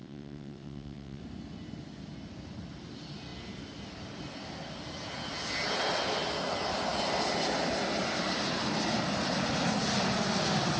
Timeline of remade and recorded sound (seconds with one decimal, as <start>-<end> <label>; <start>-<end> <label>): 0.0-1.2 remade; 1.2-10.8 recorded